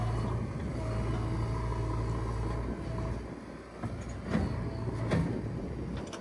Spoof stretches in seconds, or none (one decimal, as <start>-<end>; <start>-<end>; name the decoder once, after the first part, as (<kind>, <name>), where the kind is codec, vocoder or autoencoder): none